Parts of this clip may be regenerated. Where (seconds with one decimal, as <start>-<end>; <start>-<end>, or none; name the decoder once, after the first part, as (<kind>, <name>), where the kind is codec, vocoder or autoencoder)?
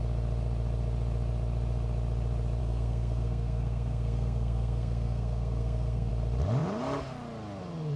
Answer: 2.6-6.1 (codec, SNAC)